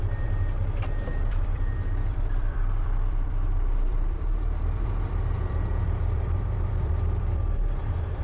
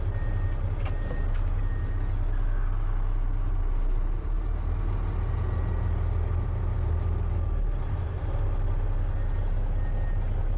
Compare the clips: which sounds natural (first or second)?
second